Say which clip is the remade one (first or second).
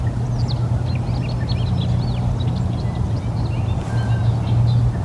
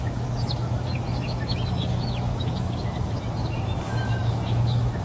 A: second